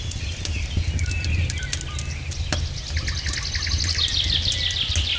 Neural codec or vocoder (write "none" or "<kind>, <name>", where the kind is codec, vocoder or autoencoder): none